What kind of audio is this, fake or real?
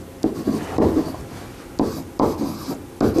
real